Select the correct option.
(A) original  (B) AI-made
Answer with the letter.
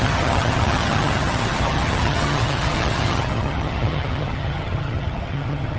B